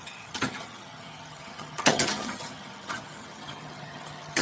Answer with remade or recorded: remade